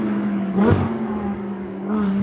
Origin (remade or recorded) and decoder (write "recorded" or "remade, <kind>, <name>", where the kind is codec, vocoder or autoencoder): remade, codec, DAC